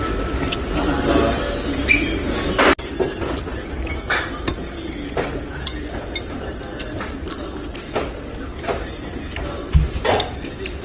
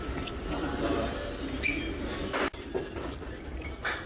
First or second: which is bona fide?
first